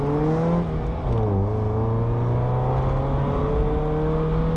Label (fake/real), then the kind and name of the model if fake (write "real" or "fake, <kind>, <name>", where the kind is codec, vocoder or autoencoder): real